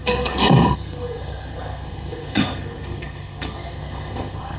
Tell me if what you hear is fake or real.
fake